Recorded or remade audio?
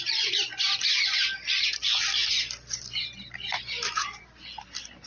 recorded